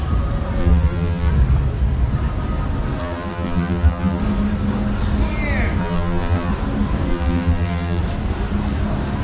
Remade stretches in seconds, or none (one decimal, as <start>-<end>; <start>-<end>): 0.6-1.3; 3.0-4.2; 5.8-6.5; 7.1-8.0